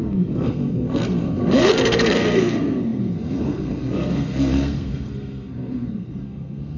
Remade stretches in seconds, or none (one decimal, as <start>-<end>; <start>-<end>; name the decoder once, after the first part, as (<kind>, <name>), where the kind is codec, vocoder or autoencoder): 0.0-6.8 (codec, SNAC)